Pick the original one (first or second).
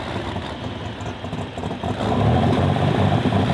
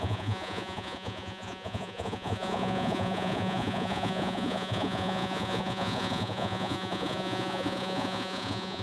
first